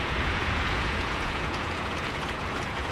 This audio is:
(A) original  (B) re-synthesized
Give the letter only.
B